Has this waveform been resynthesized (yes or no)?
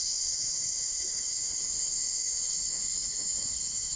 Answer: yes